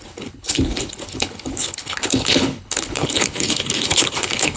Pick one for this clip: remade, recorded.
remade